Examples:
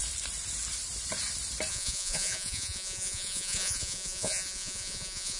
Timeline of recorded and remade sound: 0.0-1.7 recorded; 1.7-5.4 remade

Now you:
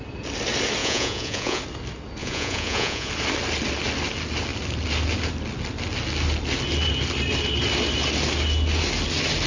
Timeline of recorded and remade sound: 0.0-0.8 recorded; 0.8-1.6 remade; 1.6-2.2 recorded; 2.2-3.1 remade; 3.1-9.5 recorded

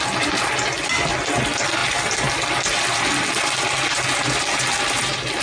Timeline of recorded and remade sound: 0.0-5.4 recorded

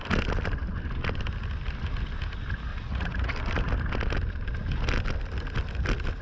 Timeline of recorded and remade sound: 0.0-2.7 recorded; 2.7-3.3 remade; 3.3-6.2 recorded

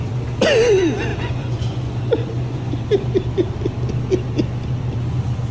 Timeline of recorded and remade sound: 0.0-1.1 recorded; 1.1-2.7 remade; 2.7-5.5 recorded